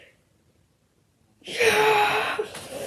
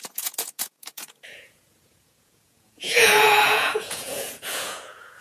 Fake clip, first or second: second